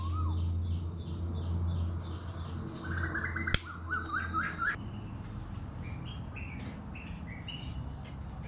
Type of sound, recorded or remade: recorded